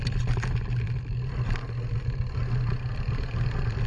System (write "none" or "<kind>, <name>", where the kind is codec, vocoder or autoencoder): none